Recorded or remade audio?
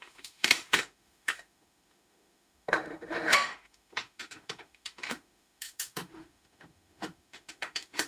remade